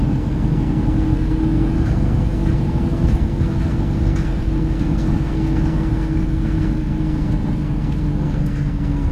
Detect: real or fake fake